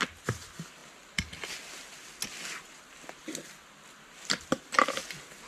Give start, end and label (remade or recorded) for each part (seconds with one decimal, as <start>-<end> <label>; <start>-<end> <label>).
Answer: 0.0-5.5 recorded

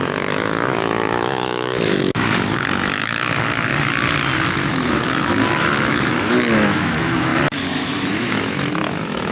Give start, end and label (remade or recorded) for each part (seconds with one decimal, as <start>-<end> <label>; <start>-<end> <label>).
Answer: 0.0-3.7 remade; 3.7-4.7 recorded; 4.7-9.3 remade

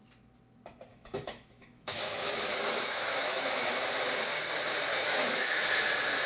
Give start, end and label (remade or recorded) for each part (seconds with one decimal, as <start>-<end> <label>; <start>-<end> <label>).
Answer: 0.0-0.9 recorded; 0.9-3.7 remade; 3.7-4.9 recorded; 4.9-5.6 remade; 5.6-6.3 recorded

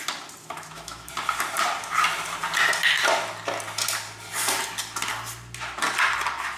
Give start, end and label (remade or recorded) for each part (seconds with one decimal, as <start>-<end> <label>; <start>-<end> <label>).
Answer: 0.0-0.4 recorded; 0.4-1.1 remade; 1.1-6.6 recorded

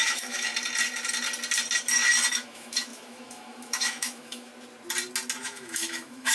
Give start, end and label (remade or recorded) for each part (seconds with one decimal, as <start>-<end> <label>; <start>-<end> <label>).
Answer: 0.0-0.5 remade; 0.5-2.3 recorded; 2.3-4.5 remade; 4.5-5.4 recorded; 5.4-6.3 remade